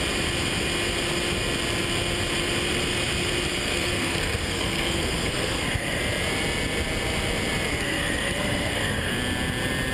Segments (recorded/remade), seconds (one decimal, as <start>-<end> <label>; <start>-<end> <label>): 0.0-3.5 recorded; 3.5-6.0 remade; 6.0-7.7 recorded; 7.7-9.1 remade; 9.1-9.9 recorded